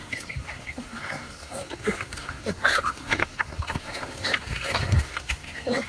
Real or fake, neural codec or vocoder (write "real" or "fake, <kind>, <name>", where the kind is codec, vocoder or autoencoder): fake, codec, SNAC